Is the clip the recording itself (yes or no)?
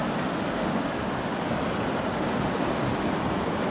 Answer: yes